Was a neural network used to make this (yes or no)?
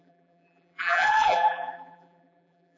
yes